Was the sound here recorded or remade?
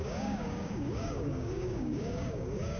remade